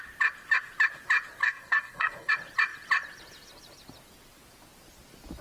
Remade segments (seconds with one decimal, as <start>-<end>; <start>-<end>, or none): 1.4-2.3